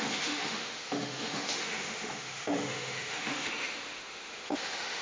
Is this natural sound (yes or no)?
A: no